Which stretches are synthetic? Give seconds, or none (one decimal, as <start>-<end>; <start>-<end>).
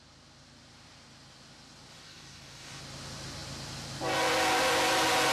1.9-2.8